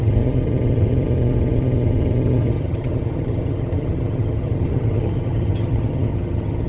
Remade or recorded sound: remade